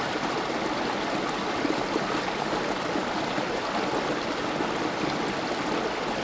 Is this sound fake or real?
real